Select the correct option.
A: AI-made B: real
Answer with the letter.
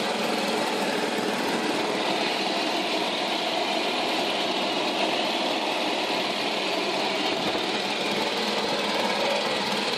B